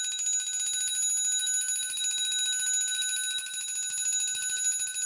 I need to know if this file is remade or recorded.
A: recorded